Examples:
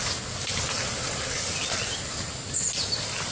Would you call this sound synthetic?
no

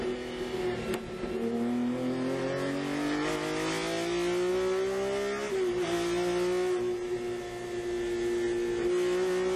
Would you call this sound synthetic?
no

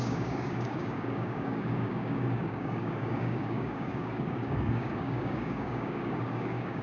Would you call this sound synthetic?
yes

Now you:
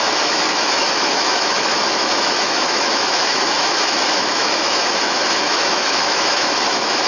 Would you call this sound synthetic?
yes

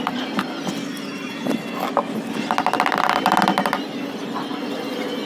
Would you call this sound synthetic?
no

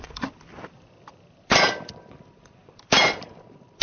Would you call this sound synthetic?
yes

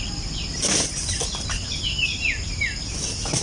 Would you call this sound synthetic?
no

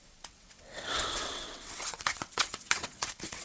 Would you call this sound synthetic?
yes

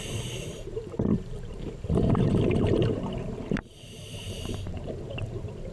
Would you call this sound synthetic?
yes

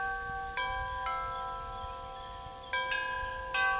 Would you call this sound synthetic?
no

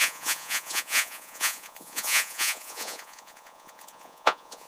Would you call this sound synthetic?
yes